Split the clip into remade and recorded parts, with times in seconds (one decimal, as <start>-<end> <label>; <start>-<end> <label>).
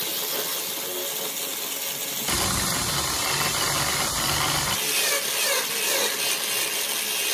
0.0-7.3 recorded